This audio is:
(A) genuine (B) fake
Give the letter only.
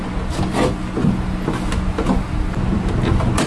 A